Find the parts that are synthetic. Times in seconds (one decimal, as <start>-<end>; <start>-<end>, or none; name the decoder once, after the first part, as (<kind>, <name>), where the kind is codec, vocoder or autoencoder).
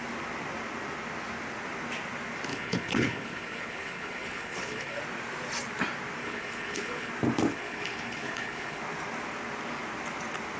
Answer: 2.5-5.0 (codec, HILCodec); 6.2-7.1; 7.5-8.8